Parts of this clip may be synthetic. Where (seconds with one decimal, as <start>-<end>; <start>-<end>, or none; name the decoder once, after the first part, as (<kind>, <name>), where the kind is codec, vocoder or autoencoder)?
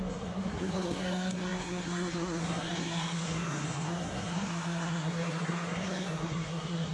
0.0-6.9 (codec, SNAC)